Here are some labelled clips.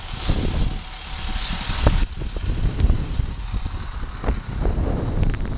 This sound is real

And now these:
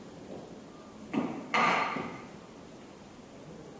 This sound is real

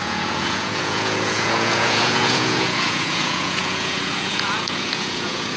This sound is fake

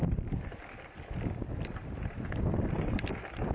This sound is fake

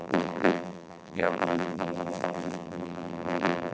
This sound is fake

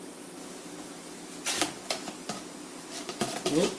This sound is real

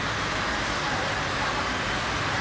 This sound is real